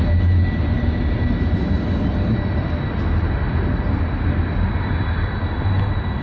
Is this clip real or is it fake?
real